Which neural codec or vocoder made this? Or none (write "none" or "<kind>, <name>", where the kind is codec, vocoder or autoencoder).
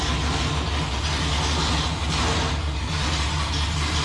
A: none